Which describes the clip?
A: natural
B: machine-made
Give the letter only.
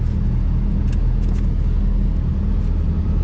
A